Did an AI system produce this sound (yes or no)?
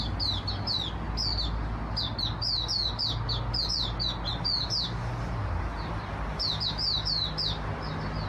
no